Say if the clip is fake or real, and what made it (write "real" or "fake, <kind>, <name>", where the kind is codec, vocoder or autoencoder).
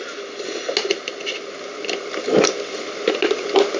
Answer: real